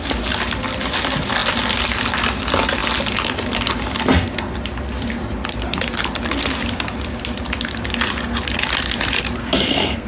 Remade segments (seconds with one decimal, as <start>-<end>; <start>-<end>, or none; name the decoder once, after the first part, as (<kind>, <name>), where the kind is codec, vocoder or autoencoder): 9.4-10.1 (codec, SNAC)